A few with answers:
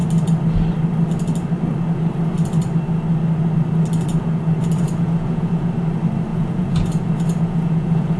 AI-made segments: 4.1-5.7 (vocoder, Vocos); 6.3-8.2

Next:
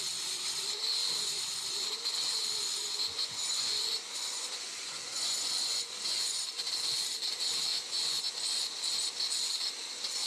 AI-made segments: 1.0-2.4 (vocoder, Vocos); 2.8-6.4; 7.7-8.8

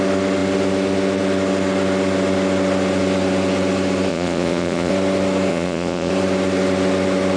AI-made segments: 4.1-4.9 (vocoder, Vocos); 5.5-6.1